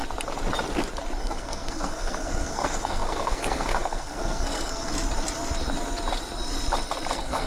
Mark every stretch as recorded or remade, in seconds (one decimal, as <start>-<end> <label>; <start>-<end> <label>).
0.0-1.2 recorded; 1.2-4.9 remade; 4.9-7.1 recorded; 7.1-7.5 remade